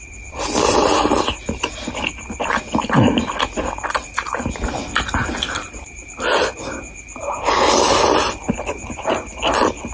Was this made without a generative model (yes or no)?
yes